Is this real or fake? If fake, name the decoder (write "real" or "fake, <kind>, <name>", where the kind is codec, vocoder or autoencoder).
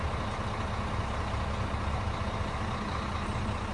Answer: real